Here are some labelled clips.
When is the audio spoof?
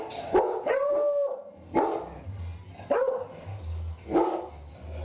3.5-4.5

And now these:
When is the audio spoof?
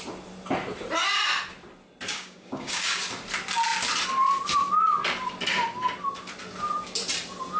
2.1-3.0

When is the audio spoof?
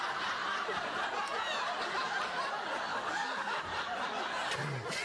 2.9-3.6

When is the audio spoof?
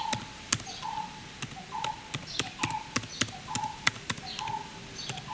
none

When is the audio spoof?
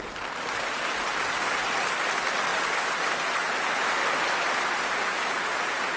none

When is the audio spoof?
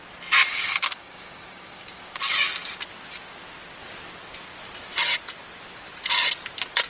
0.4-2.2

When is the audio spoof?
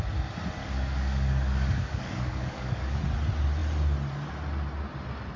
0.6-3.0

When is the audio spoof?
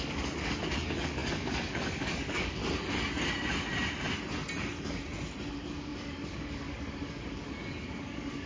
0.0-2.6; 5.5-8.5